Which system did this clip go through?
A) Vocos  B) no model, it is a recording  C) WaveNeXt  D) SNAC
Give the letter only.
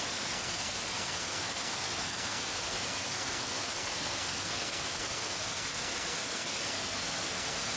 D